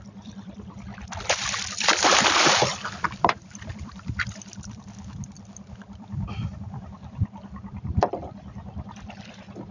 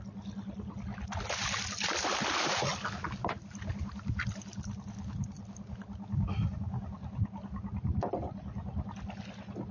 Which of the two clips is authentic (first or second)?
second